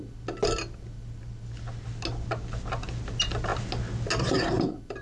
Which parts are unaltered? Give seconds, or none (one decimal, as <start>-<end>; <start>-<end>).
0.0-5.0